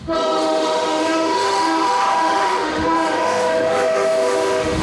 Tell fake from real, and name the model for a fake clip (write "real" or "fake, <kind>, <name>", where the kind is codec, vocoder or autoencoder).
fake, autoencoder, DAC-VAE